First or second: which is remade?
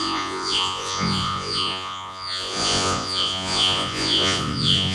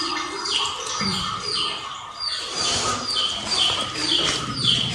first